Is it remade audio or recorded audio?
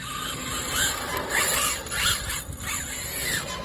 recorded